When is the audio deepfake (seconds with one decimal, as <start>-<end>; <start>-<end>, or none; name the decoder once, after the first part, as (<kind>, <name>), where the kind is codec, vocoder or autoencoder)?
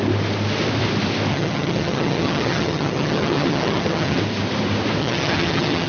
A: 1.3-4.2 (vocoder, HiFi-GAN); 5.0-5.9